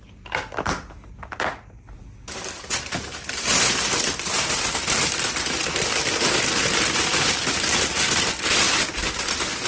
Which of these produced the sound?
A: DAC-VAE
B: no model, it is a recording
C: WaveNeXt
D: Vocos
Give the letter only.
B